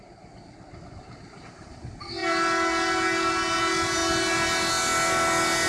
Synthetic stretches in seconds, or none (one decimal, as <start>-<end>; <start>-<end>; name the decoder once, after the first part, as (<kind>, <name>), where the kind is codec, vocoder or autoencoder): none